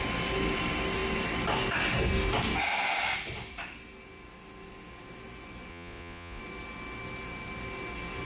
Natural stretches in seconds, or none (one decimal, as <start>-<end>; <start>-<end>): 0.0-5.7; 6.4-8.2